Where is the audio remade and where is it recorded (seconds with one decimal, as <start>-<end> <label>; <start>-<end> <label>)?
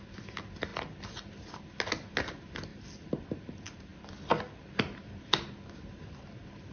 0.0-0.7 recorded; 0.7-1.3 remade; 1.3-2.7 recorded; 2.7-3.2 remade; 3.2-3.9 recorded; 3.9-4.6 remade; 4.6-6.7 recorded